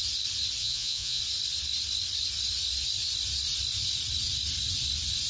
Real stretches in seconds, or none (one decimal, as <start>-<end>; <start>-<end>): 0.0-0.6; 1.2-5.3